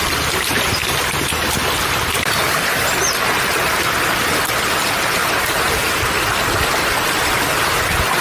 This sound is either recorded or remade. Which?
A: recorded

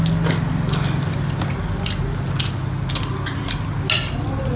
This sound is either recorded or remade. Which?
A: recorded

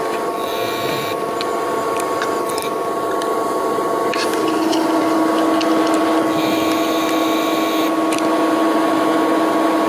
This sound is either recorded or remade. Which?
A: recorded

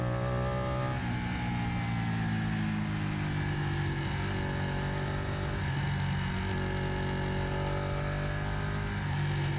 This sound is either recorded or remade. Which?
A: recorded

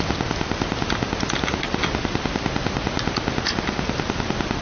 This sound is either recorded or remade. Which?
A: recorded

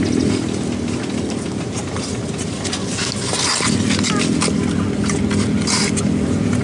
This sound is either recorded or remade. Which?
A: recorded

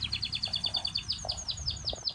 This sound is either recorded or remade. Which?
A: recorded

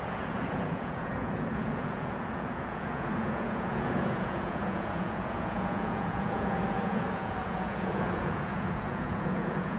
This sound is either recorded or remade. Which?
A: remade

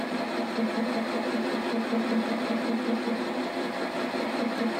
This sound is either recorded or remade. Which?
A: recorded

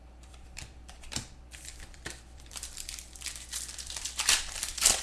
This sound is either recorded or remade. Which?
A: remade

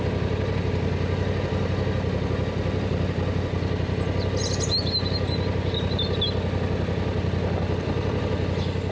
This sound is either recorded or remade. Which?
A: recorded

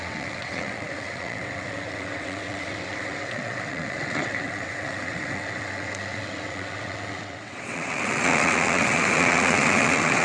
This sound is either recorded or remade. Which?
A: remade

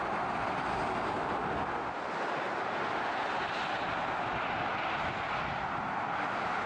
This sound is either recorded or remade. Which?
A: recorded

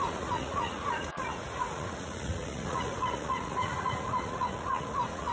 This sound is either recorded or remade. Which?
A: remade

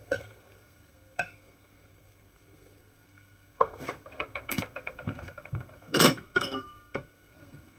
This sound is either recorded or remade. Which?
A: remade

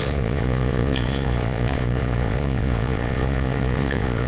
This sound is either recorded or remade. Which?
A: remade